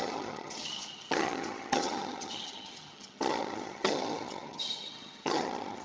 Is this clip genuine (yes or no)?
no